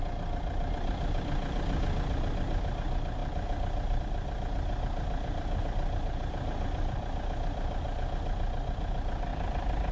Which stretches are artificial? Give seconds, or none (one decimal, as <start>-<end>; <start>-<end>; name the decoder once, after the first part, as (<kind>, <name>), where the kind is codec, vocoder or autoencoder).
none